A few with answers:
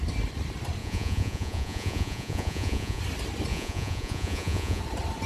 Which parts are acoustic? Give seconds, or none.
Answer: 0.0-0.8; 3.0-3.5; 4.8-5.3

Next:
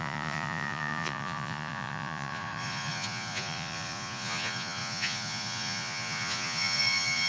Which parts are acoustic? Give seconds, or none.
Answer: none

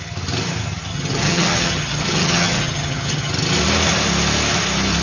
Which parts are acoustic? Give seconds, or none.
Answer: 0.0-0.9; 3.3-5.0

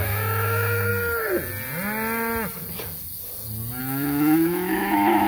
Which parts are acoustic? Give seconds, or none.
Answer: 0.9-3.8

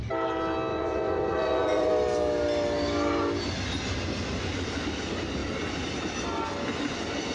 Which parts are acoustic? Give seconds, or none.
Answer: 0.0-0.7; 1.9-7.3

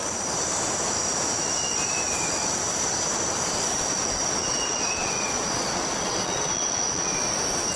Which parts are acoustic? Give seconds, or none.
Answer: 0.0-4.4; 7.1-7.8

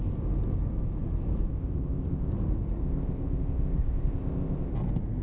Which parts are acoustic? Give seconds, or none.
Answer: 0.0-1.5; 2.3-2.8; 4.7-5.2